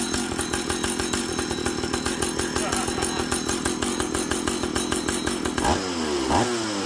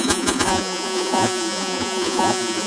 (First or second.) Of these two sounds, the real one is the first